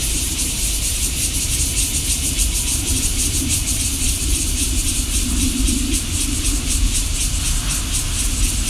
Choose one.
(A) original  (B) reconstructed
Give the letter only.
B